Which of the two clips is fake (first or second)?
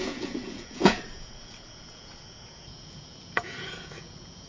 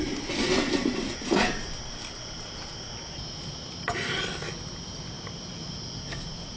first